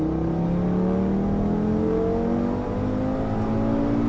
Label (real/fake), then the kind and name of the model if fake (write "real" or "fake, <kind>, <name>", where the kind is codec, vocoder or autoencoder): real